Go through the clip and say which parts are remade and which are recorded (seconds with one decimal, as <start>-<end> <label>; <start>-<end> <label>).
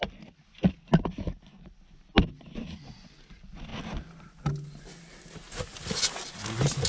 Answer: 0.0-6.9 recorded